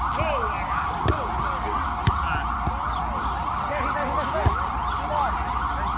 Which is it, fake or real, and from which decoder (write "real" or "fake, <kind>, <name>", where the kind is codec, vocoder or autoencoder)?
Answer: real